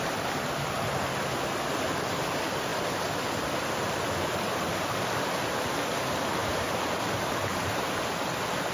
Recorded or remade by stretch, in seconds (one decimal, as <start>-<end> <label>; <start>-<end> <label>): 0.0-8.7 recorded

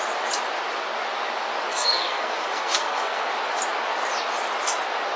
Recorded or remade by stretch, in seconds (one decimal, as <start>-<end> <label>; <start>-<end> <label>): 0.0-1.7 recorded; 1.7-3.3 remade; 3.3-5.2 recorded

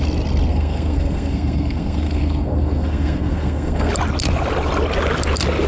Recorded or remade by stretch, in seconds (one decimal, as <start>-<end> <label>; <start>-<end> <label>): 0.0-0.5 recorded; 0.5-3.9 remade; 3.9-5.7 recorded

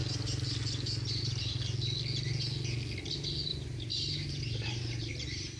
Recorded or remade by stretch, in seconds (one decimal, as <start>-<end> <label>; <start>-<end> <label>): 0.0-3.5 recorded; 3.5-5.6 remade

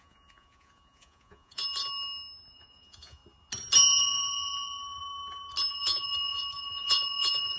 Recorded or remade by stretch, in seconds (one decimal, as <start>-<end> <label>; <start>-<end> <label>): 0.0-1.6 remade; 1.6-2.5 recorded; 2.5-3.2 remade; 3.2-4.0 recorded; 4.0-5.0 remade; 5.0-5.7 recorded; 5.7-7.6 remade

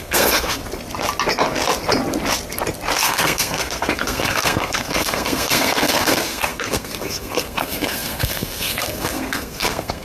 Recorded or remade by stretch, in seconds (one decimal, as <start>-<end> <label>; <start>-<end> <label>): 0.0-0.6 remade; 0.6-3.0 recorded; 3.0-10.0 remade

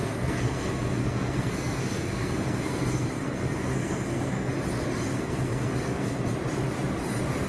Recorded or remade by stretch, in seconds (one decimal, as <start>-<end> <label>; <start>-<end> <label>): 0.0-4.5 remade; 4.5-5.1 recorded; 5.1-6.3 remade; 6.3-7.5 recorded

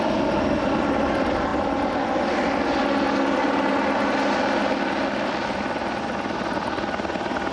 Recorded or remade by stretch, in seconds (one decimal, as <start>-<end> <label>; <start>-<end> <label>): 0.0-7.5 recorded